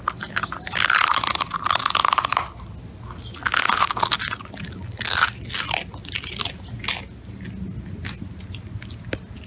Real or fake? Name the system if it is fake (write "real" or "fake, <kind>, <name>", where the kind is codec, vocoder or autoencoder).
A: real